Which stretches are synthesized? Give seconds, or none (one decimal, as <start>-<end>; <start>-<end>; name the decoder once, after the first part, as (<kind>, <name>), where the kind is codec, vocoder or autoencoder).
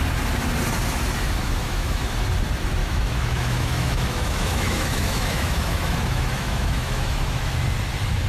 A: 1.4-2.1 (autoencoder, DAC-VAE); 2.8-7.5